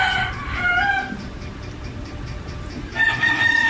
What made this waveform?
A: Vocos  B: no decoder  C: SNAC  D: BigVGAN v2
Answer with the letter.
D